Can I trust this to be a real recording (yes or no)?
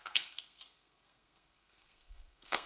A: no